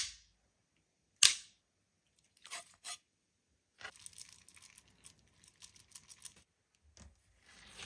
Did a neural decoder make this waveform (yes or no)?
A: no